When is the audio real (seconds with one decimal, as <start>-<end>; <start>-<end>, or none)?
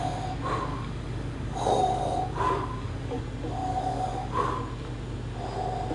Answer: 0.0-0.7; 3.2-3.6; 4.6-5.9